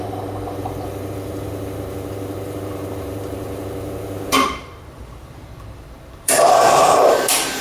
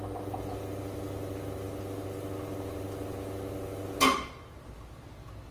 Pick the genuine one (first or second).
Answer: second